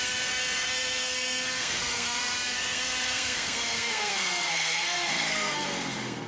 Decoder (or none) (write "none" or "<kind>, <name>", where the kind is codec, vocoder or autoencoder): codec, SNAC